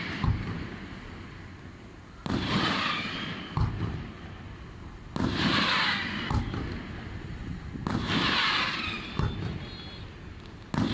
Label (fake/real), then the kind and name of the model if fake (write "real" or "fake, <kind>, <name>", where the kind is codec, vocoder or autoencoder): real